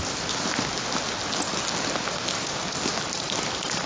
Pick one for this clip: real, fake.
real